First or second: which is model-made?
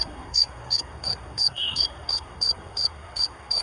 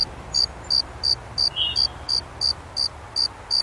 first